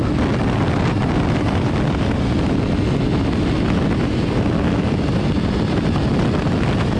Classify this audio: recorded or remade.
recorded